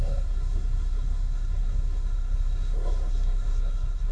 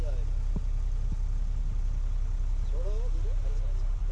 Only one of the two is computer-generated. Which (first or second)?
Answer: first